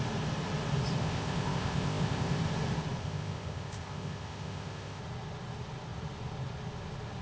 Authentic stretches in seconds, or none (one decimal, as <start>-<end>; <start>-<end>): 0.0-1.0; 2.4-3.0; 5.0-7.2